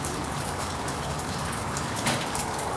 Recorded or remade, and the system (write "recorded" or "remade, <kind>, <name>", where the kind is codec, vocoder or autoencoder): remade, codec, DAC